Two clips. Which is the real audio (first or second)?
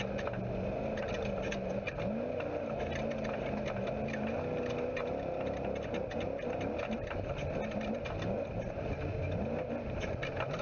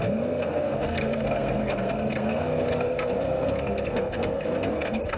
first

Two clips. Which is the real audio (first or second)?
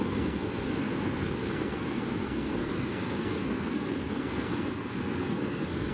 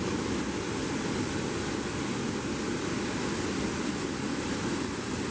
second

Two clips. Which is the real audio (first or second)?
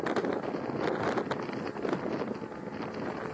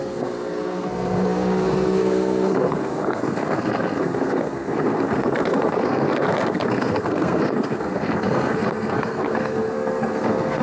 first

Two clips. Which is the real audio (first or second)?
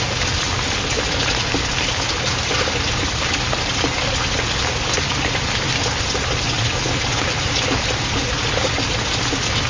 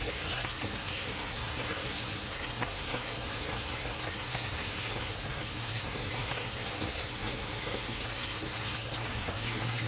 first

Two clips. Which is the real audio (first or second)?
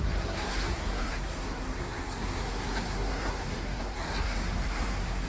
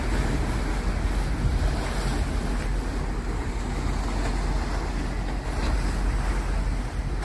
second